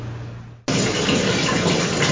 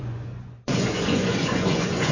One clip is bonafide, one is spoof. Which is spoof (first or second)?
second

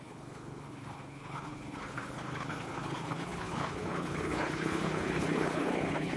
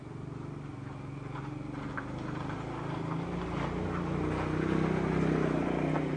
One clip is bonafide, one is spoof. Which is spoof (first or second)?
first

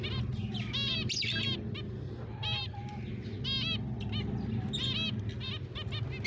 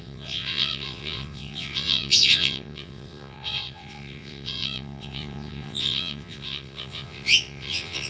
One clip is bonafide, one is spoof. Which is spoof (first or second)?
second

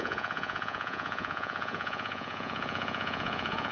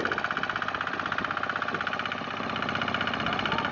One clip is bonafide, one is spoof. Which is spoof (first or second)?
first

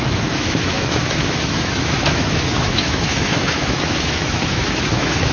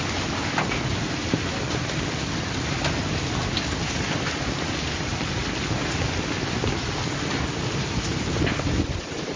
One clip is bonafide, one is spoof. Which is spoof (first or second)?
first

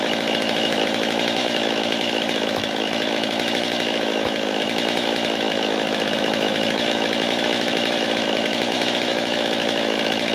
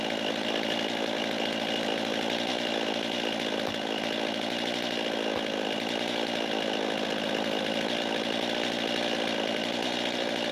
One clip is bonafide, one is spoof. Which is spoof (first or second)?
first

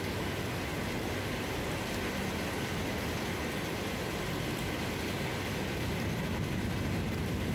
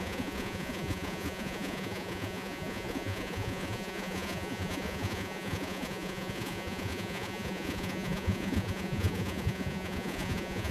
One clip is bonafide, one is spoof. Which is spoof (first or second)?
second